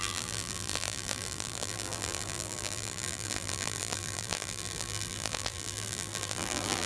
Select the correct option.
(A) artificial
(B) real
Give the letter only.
A